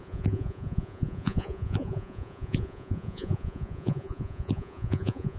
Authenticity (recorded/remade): remade